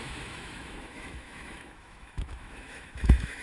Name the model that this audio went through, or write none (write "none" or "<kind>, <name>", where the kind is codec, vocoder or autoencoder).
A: autoencoder, DAC-VAE